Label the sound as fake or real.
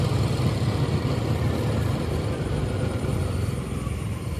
real